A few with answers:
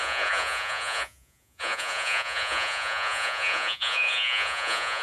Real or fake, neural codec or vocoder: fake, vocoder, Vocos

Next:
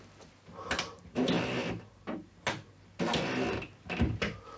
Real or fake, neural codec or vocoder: real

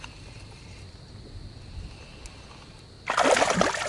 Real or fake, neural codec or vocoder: real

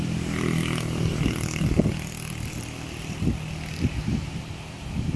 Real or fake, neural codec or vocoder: real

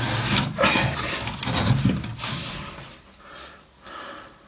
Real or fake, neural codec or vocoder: real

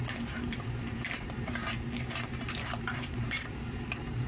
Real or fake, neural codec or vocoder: fake, vocoder, BigVGAN v2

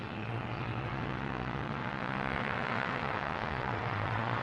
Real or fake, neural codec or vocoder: fake, vocoder, WaveNeXt